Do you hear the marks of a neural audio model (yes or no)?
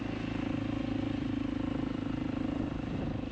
no